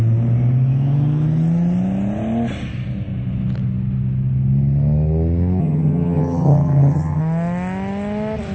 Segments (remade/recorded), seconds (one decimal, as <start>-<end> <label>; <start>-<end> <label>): 0.0-5.6 recorded; 5.6-7.2 remade; 7.2-8.5 recorded